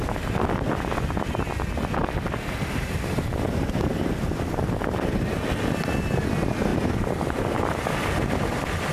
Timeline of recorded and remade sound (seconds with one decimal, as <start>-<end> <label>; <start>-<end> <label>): 0.0-6.7 recorded; 6.7-8.9 remade